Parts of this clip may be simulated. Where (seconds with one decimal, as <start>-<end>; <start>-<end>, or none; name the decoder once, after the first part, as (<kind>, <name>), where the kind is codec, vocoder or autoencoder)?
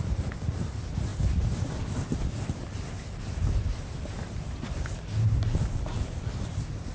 none